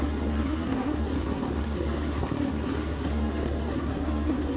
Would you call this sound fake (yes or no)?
yes